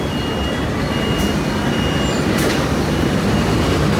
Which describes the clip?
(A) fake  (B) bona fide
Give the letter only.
B